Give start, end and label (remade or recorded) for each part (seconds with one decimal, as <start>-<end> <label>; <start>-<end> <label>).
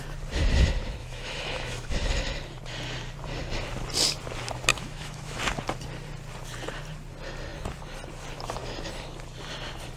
0.0-1.0 recorded; 1.0-2.1 remade; 2.1-4.7 recorded; 4.7-5.4 remade; 5.4-10.0 recorded